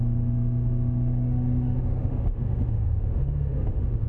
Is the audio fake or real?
fake